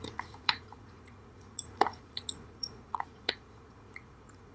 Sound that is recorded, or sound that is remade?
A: remade